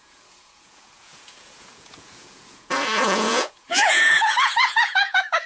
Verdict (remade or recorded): remade